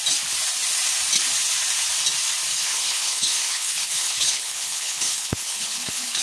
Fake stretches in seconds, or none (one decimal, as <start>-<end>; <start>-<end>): 2.5-6.2